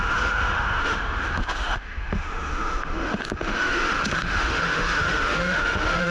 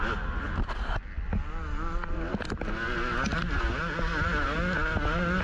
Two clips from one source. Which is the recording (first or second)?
second